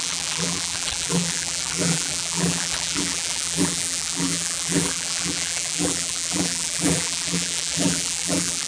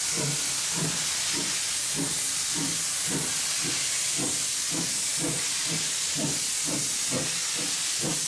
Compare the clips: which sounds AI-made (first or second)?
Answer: first